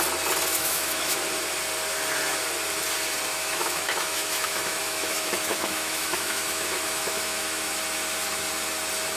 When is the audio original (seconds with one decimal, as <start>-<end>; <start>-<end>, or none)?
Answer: 0.0-0.5; 1.2-3.3; 7.8-9.2